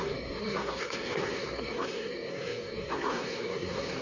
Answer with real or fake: fake